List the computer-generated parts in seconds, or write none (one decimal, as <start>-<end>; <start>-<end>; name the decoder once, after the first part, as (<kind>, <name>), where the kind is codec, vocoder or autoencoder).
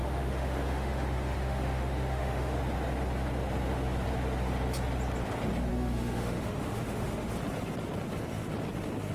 0.0-2.6 (autoencoder, DAC-VAE); 5.7-7.3